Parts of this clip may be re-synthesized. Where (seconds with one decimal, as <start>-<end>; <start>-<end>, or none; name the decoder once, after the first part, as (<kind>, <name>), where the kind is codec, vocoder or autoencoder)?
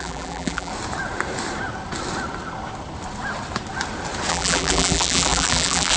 0.0-0.7 (vocoder, BigVGAN v2); 4.3-6.0